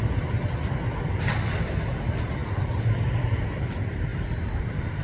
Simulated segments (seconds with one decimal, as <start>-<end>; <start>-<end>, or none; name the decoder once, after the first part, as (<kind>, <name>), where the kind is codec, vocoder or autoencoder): 0.0-5.0 (vocoder, BigVGAN v2)